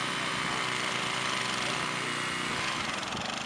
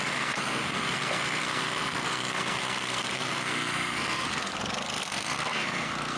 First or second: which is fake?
second